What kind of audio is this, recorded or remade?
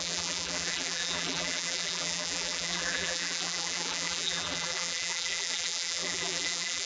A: remade